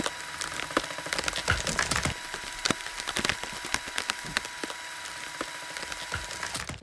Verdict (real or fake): real